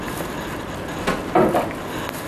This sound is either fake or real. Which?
real